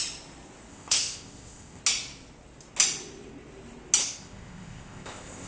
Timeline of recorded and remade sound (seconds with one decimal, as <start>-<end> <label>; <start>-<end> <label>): 0.0-0.7 recorded; 0.7-1.8 remade; 1.8-4.0 recorded; 4.0-5.5 remade